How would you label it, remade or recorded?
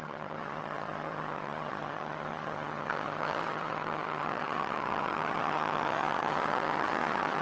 remade